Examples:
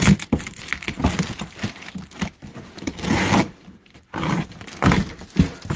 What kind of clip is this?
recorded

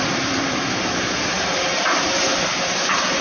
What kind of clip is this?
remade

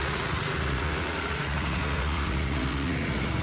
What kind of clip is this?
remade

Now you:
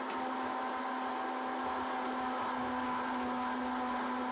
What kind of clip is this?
recorded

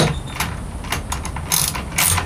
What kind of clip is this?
recorded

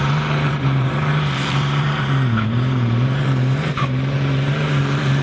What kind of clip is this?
remade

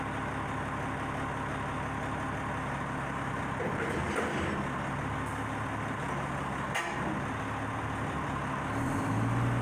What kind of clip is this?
recorded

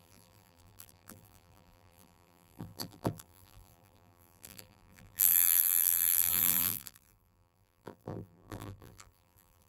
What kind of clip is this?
remade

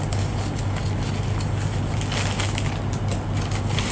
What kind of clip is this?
recorded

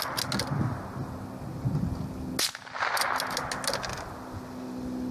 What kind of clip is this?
recorded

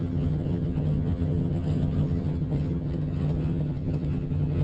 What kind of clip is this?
remade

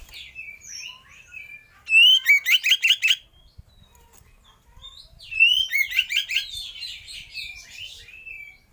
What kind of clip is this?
recorded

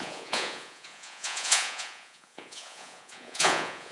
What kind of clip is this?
remade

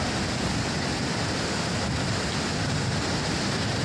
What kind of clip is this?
recorded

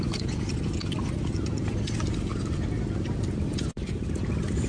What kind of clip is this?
remade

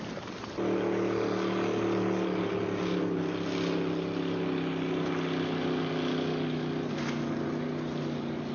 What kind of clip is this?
recorded